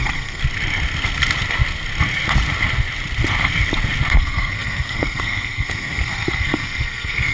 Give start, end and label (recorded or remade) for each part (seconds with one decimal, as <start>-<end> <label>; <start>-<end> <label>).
0.0-0.4 remade; 0.4-4.1 recorded; 4.1-7.3 remade

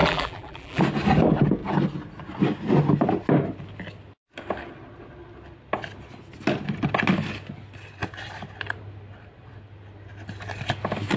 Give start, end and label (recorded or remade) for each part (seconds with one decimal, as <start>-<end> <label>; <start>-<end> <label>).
0.0-0.8 remade; 0.8-11.2 recorded

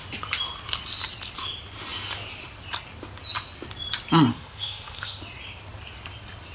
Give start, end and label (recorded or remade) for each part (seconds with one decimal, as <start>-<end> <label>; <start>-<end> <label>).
0.0-4.3 recorded; 4.3-5.2 remade; 5.2-6.5 recorded

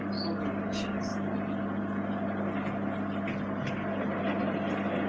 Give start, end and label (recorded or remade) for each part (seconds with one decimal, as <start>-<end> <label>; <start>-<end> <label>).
0.0-5.1 recorded

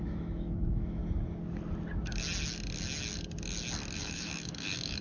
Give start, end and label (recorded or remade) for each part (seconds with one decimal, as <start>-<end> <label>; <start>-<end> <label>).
0.0-1.0 remade; 1.0-4.0 recorded; 4.0-5.0 remade